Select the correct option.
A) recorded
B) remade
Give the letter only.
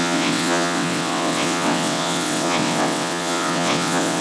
B